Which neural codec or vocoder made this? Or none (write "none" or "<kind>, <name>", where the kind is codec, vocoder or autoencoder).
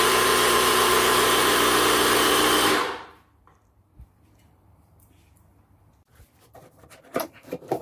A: vocoder, BigVGAN v2